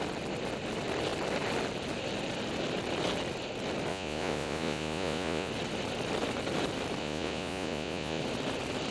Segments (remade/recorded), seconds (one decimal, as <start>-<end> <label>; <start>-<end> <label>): 0.0-3.9 recorded; 3.9-5.5 remade; 5.5-7.0 recorded; 7.0-8.2 remade; 8.2-8.9 recorded